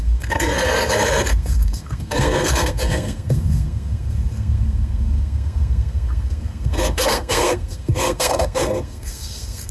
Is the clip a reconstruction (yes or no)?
yes